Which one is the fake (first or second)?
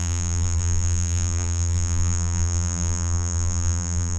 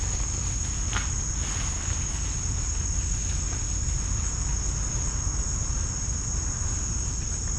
first